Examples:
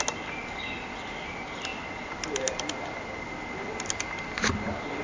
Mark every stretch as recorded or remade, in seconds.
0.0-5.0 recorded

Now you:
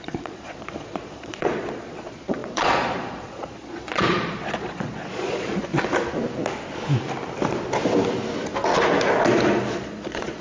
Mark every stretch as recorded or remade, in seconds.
0.0-5.7 remade; 5.7-9.7 recorded; 9.7-10.4 remade

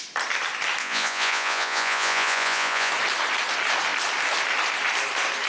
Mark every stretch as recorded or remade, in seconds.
0.0-0.8 recorded; 0.8-2.9 remade; 2.9-5.5 recorded

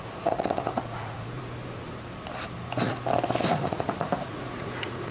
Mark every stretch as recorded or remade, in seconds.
0.0-1.4 remade; 1.4-3.5 recorded; 3.5-5.1 remade

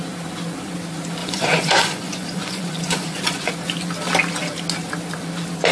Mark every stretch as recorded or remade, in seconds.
0.0-1.2 recorded; 1.2-3.5 remade; 3.5-5.7 recorded

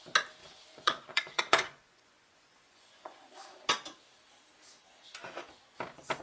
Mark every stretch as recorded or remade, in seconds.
0.0-0.4 recorded; 0.4-3.2 remade; 3.2-6.2 recorded